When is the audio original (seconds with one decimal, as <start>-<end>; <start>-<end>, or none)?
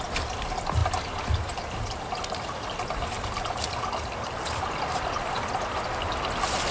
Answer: 0.0-6.7